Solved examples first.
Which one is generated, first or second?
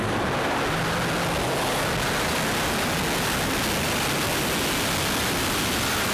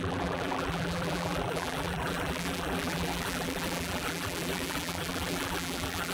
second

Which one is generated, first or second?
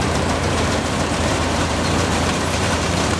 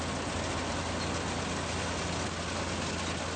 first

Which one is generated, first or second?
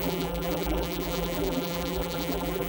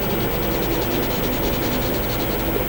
first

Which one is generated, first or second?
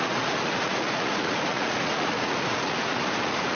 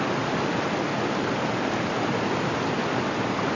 first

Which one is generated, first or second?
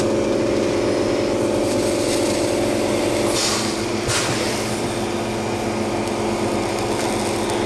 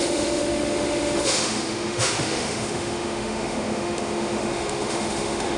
second